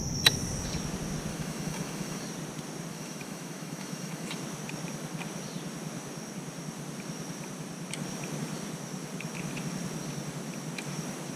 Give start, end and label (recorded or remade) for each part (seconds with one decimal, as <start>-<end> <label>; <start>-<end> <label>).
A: 0.0-1.3 recorded; 1.3-2.2 remade; 2.2-2.9 recorded; 2.9-4.4 remade; 4.4-11.4 recorded